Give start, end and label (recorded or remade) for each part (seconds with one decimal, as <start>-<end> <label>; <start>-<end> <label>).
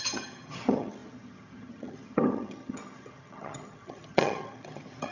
0.0-5.1 remade